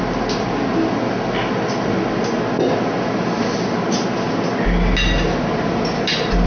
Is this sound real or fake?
real